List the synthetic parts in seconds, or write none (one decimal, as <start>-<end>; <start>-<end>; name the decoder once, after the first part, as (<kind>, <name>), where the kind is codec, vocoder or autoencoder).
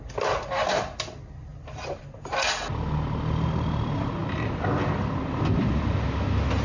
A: 1.5-2.2 (vocoder, BigVGAN v2); 4.2-5.8